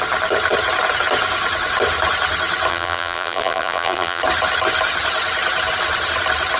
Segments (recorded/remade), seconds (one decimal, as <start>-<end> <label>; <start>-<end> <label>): 0.0-2.7 recorded; 2.7-4.2 remade; 4.2-6.6 recorded